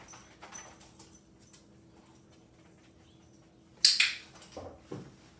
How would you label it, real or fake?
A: real